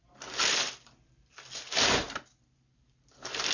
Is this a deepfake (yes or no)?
no